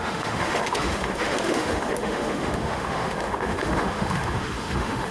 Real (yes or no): no